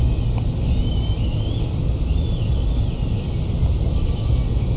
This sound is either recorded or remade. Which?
recorded